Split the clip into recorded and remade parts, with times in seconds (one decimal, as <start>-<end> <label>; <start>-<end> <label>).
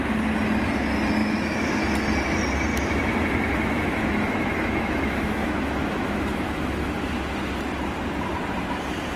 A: 0.0-1.2 recorded; 1.2-1.8 remade; 1.8-2.7 recorded; 2.7-7.0 remade; 7.0-9.2 recorded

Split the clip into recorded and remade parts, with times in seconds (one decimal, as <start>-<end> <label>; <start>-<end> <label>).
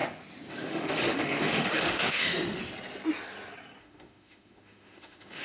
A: 0.0-0.5 recorded; 0.5-2.6 remade; 2.6-3.8 recorded; 3.8-5.4 remade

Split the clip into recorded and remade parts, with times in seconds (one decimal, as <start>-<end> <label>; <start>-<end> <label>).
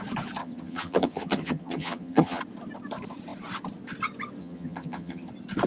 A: 0.0-0.4 recorded; 0.4-2.4 remade; 2.4-4.4 recorded; 4.4-5.3 remade; 5.3-5.7 recorded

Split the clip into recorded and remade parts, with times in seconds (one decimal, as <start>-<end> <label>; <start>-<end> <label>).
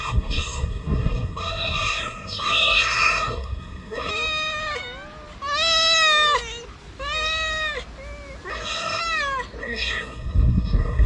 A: 0.0-4.1 remade; 4.1-8.5 recorded; 8.5-9.0 remade; 9.0-9.6 recorded; 9.6-11.1 remade